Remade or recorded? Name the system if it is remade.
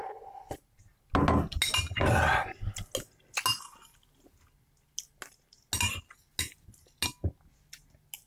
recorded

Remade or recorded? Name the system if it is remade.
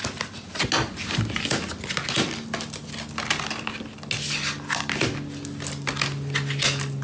recorded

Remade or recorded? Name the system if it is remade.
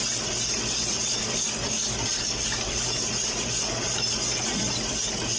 recorded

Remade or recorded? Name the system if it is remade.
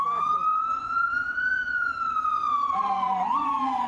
remade, vocoder, Vocos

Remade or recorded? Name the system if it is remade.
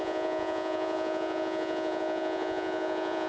remade, vocoder, Vocos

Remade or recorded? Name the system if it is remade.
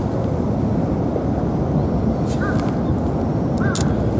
recorded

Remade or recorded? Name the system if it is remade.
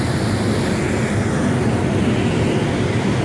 recorded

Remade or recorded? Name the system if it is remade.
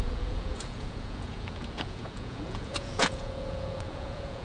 remade, vocoder, Vocos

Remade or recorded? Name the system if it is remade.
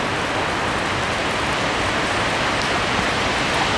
recorded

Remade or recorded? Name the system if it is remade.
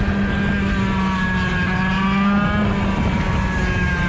recorded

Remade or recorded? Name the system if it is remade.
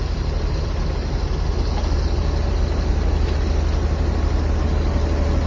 recorded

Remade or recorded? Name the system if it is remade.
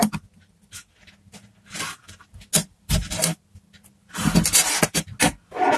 recorded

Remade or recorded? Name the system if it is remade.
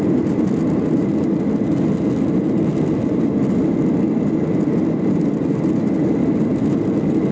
recorded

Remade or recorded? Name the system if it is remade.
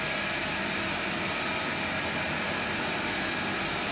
recorded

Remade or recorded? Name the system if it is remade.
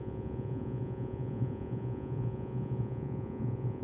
remade, vocoder, Vocos